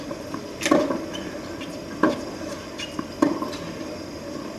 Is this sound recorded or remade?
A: recorded